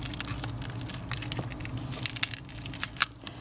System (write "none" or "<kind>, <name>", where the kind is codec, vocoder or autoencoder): none